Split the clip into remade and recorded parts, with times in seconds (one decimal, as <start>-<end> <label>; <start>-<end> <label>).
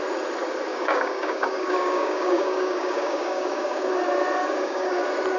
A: 0.0-0.7 recorded; 0.7-3.9 remade; 3.9-4.4 recorded; 4.4-4.9 remade; 4.9-5.4 recorded